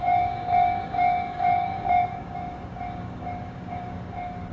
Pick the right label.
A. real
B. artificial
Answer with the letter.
B